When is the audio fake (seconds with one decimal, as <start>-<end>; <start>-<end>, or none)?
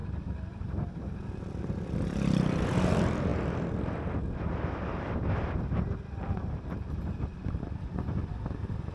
0.0-1.0; 7.3-8.1